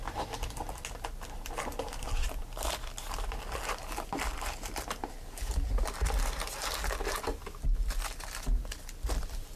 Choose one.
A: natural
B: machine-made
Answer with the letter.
A